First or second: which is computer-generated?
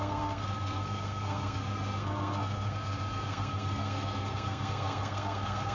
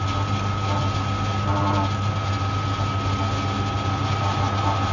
first